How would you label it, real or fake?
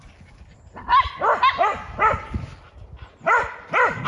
real